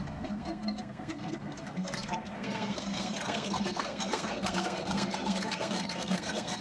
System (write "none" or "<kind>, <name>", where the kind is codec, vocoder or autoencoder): codec, SNAC